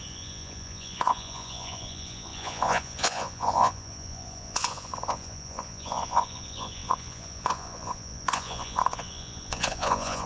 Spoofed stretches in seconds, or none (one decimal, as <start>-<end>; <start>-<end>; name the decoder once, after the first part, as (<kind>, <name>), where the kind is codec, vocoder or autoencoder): 0.0-10.3 (vocoder, Vocos)